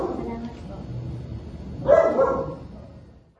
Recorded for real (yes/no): yes